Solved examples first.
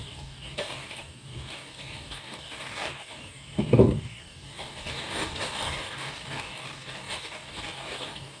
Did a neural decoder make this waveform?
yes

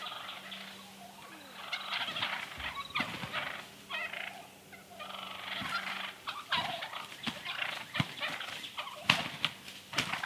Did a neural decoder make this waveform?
no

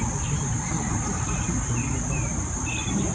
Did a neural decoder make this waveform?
no